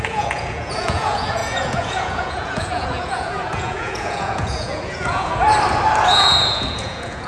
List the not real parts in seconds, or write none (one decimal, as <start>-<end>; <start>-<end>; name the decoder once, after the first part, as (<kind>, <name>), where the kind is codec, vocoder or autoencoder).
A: 0.0-5.3 (vocoder, Vocos); 6.1-7.3